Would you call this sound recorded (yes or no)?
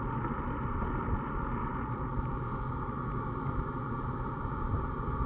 yes